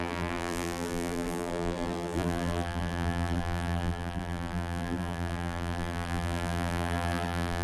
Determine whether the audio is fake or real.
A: fake